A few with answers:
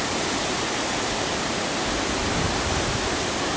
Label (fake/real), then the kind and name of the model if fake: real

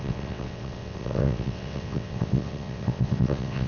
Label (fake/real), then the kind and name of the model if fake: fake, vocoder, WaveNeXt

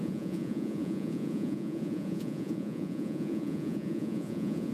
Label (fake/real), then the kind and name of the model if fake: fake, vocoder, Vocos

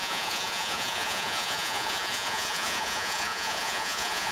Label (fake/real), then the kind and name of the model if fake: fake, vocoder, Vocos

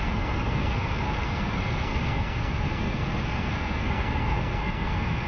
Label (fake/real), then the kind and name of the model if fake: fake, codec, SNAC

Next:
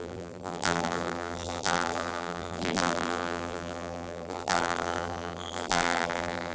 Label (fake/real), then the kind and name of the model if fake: fake, vocoder, BigVGAN v2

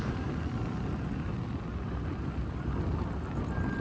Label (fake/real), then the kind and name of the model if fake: real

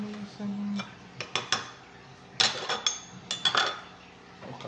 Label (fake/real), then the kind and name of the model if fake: real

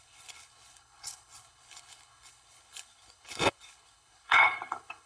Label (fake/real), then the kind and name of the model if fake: fake, codec, HILCodec